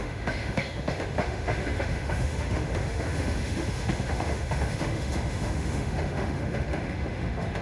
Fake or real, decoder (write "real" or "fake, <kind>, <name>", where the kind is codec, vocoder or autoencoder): fake, autoencoder, DAC-VAE